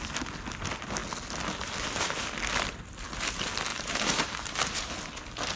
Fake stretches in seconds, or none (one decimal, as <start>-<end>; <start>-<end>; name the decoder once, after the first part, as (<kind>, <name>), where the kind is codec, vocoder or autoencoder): 3.7-4.5 (vocoder, BigVGAN v2)